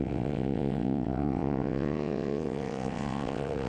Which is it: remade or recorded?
remade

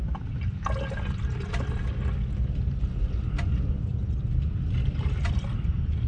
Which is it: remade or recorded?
recorded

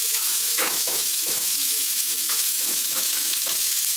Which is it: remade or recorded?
remade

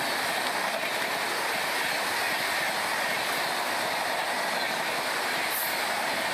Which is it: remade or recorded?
recorded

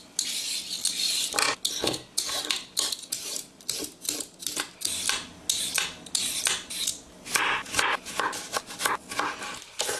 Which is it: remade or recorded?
recorded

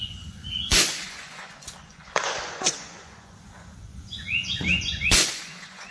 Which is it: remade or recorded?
remade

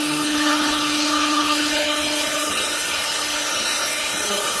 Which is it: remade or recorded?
remade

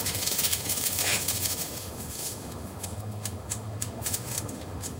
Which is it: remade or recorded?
remade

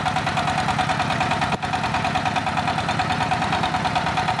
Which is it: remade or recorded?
recorded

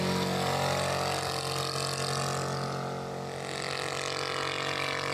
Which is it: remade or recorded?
recorded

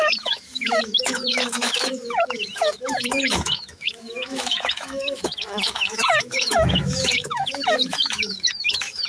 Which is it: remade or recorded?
remade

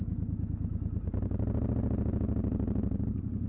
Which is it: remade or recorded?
recorded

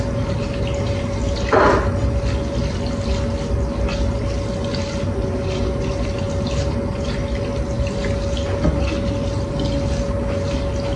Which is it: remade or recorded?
recorded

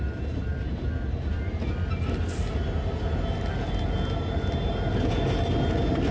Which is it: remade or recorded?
recorded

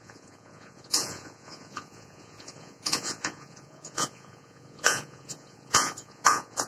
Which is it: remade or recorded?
remade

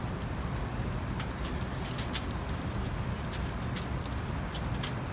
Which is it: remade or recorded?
recorded